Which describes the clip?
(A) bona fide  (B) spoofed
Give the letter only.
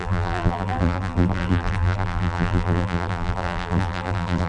B